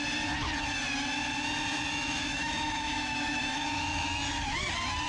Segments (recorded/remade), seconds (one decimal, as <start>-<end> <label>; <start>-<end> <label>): 0.0-1.9 recorded; 1.9-4.3 remade; 4.3-5.1 recorded